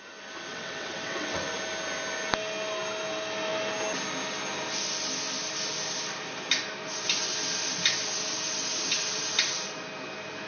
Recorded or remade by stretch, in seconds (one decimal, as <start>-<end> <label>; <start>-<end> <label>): 0.0-0.5 recorded; 0.5-1.4 remade; 1.4-10.5 recorded